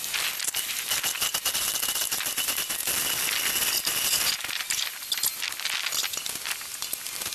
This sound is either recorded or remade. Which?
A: recorded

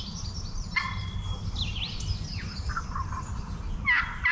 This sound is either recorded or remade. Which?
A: recorded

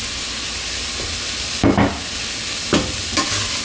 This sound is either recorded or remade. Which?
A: recorded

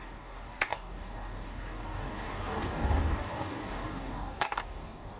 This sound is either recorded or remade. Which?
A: remade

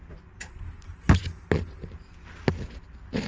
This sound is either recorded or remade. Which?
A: recorded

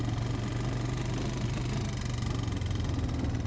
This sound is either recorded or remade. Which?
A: recorded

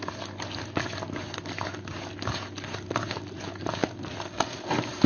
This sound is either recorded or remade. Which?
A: recorded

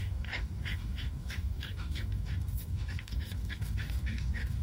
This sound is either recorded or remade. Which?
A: remade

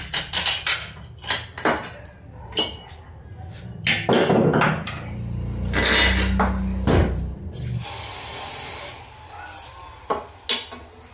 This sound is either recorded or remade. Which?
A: recorded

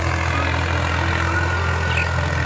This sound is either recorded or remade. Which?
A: recorded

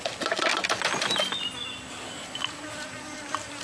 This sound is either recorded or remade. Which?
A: recorded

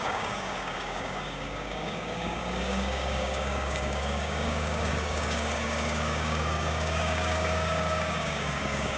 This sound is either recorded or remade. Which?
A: remade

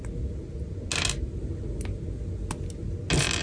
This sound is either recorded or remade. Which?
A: recorded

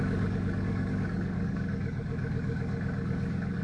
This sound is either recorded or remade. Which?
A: remade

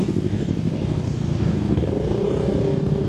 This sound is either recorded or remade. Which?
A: remade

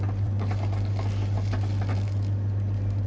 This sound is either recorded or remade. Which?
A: recorded